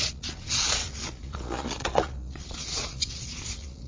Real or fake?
fake